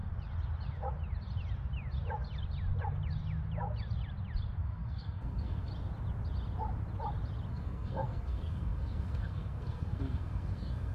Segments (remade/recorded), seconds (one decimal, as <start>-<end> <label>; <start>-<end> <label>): 0.0-4.6 recorded; 4.6-5.7 remade; 5.7-7.5 recorded; 7.5-10.9 remade